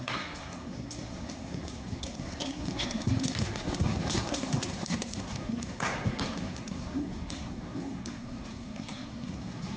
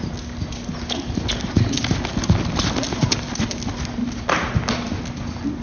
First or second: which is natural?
second